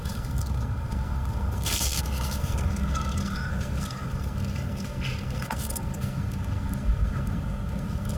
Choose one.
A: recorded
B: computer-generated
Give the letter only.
B